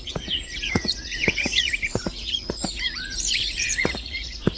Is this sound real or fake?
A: fake